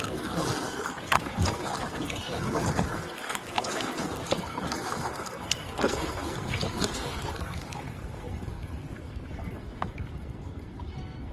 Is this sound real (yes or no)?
no